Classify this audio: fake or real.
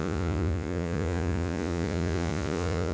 fake